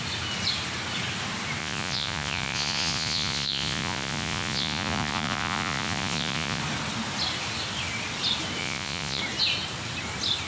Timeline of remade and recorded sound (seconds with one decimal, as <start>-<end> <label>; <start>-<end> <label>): 0.0-1.6 recorded; 1.6-6.6 remade; 6.6-8.6 recorded; 8.6-9.2 remade; 9.2-10.5 recorded